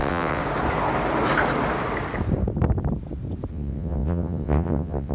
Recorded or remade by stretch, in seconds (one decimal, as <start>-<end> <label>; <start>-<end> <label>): 0.0-0.4 remade; 0.4-3.5 recorded; 3.5-5.1 remade